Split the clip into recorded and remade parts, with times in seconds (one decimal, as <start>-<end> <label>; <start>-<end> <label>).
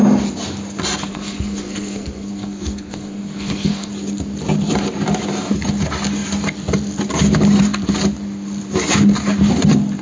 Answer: 0.0-1.1 recorded; 1.1-3.9 remade; 3.9-10.0 recorded